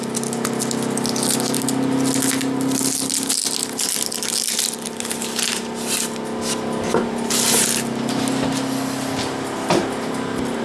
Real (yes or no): yes